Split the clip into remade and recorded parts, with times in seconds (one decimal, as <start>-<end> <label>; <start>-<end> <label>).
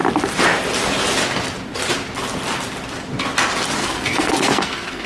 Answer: 0.0-3.8 recorded; 3.8-5.1 remade